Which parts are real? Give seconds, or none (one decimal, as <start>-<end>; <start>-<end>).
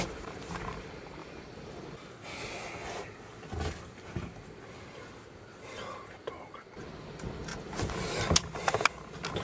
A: 0.0-1.2; 1.8-9.4